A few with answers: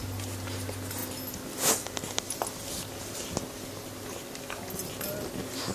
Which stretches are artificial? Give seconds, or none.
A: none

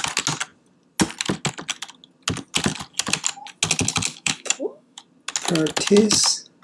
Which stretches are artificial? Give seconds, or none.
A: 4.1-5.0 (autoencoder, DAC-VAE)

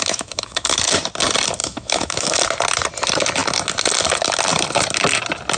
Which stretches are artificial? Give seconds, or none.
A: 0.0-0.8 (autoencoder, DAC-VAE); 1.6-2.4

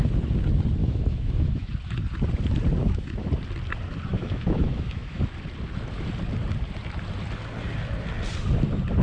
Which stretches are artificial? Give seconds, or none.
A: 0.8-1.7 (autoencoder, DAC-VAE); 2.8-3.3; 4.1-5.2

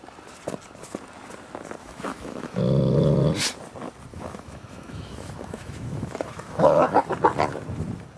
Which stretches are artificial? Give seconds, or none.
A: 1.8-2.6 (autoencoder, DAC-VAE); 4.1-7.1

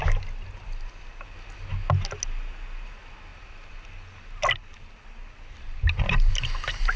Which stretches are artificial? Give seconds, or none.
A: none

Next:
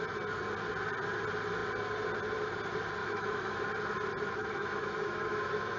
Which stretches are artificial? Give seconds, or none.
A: 3.0-3.6 (autoencoder, DAC-VAE); 4.4-5.8

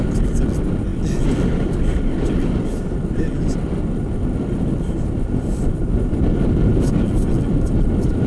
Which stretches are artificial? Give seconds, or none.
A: none